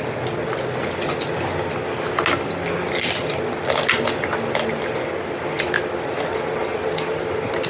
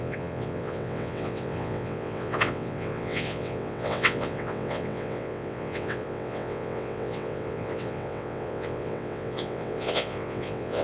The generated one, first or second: second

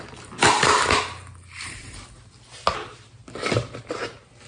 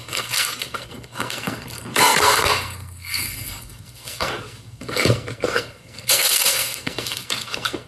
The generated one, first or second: second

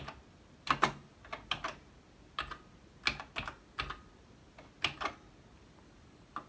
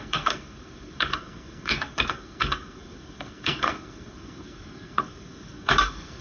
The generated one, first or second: second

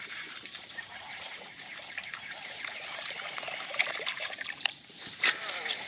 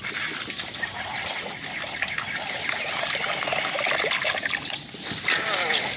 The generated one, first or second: first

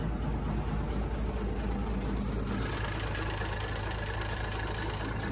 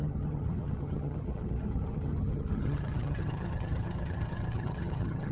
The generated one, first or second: second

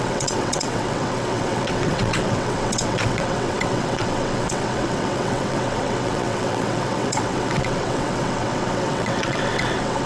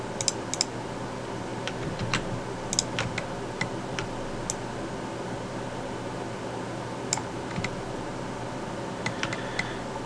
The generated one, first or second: first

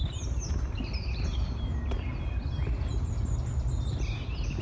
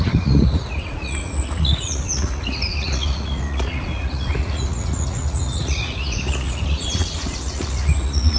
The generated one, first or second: second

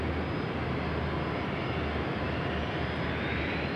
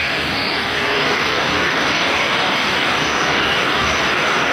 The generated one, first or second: second